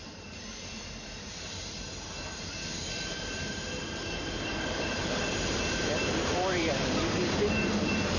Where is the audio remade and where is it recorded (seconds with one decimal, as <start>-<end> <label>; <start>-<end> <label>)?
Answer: 0.0-8.2 remade